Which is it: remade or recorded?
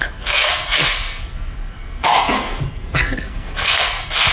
remade